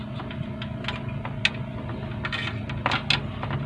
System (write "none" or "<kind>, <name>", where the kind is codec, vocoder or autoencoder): none